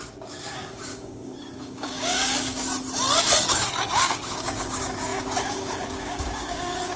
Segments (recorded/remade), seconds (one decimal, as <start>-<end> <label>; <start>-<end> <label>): 0.0-2.7 remade; 2.7-3.5 recorded; 3.5-7.0 remade